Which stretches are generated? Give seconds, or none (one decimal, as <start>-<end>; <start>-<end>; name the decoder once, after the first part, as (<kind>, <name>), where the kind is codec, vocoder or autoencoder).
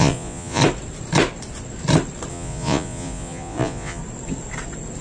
0.0-0.6 (vocoder, Vocos); 2.3-4.0